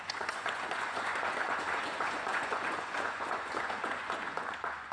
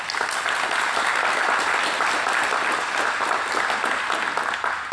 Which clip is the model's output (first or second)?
first